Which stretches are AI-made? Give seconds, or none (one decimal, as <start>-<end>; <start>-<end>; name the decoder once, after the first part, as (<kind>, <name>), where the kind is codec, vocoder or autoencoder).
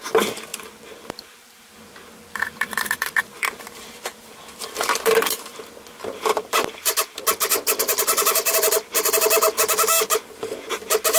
0.5-5.6 (vocoder, BigVGAN v2); 6.3-10.7